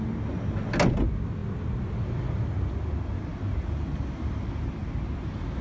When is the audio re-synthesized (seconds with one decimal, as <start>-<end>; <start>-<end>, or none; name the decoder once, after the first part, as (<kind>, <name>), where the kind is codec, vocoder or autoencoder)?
none